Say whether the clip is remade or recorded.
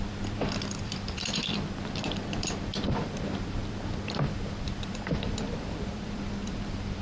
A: remade